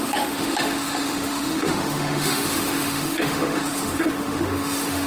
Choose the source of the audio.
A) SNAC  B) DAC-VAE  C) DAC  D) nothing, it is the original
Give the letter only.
B